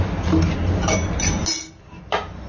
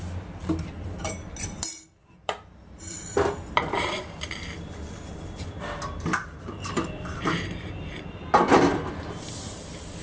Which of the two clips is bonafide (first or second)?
first